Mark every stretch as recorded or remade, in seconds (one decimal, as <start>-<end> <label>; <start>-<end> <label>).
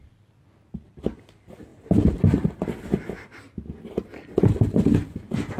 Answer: 0.0-5.6 recorded